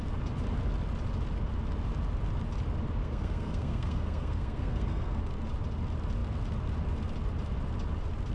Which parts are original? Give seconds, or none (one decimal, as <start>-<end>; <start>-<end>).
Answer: 0.0-3.0; 5.2-8.3